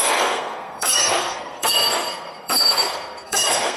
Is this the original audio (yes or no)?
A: no